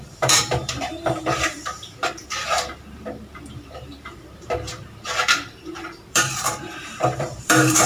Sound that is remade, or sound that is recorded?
remade